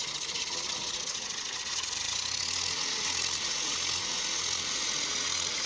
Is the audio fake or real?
fake